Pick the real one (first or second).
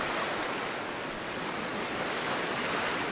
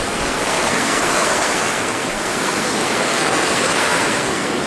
first